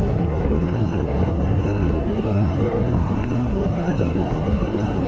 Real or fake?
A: fake